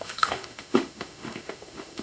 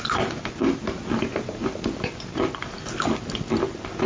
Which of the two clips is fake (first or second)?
first